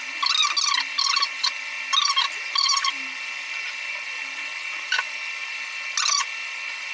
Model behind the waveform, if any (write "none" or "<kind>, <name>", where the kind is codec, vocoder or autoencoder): none